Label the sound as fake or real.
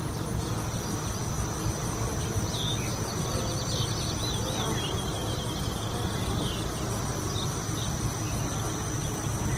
real